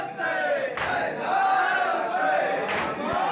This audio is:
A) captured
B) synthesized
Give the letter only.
A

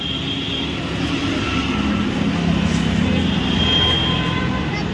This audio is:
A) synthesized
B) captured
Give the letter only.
B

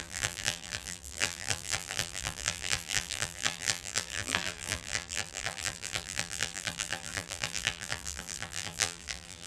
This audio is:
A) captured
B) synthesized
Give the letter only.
B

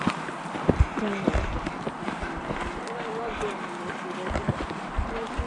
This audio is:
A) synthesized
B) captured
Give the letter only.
B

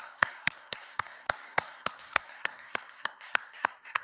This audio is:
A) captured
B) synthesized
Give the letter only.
B